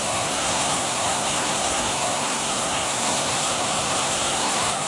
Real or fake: fake